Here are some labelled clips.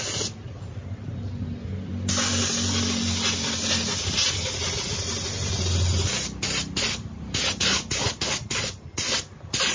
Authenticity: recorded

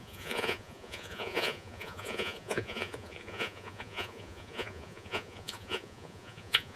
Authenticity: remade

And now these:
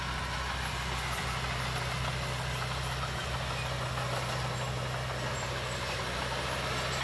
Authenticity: recorded